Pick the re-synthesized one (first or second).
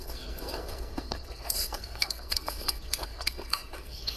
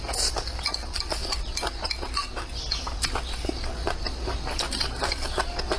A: first